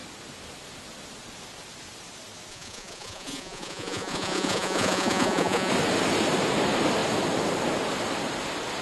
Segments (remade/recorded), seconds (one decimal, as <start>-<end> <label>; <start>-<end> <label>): 0.0-2.5 recorded; 2.5-5.7 remade; 5.7-8.8 recorded